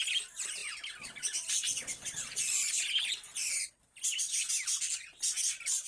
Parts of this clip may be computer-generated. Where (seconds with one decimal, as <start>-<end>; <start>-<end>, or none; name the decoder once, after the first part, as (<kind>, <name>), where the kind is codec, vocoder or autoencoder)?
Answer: 0.6-3.7 (vocoder, BigVGAN v2)